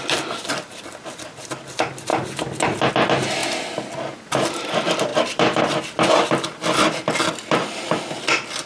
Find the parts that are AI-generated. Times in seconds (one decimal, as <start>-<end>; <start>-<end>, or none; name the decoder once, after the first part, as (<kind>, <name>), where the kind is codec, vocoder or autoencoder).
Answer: 0.0-2.1 (vocoder, BigVGAN v2); 2.9-3.4; 4.4-8.7